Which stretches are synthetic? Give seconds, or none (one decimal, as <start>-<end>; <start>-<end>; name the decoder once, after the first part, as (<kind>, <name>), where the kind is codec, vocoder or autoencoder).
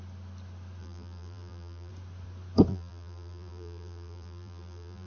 0.8-1.9 (vocoder, BigVGAN v2); 2.7-5.1